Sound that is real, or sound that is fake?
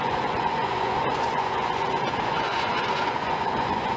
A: fake